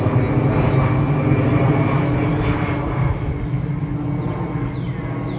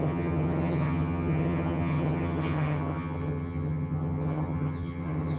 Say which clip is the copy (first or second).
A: second